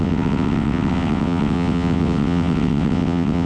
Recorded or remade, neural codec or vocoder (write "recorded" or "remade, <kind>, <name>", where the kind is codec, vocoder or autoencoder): remade, vocoder, WaveNeXt